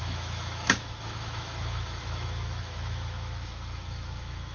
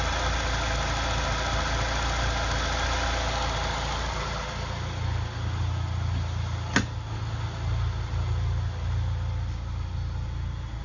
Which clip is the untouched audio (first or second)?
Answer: second